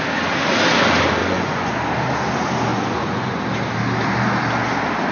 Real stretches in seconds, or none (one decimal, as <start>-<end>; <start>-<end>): 0.0-1.2; 1.7-2.7; 3.4-5.1